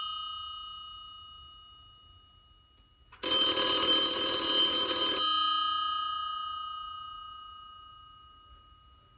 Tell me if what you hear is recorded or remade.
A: recorded